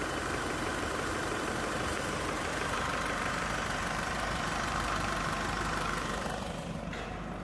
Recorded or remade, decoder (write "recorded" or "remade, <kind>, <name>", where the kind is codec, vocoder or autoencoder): remade, vocoder, BigVGAN v2